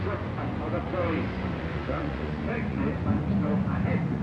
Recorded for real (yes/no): no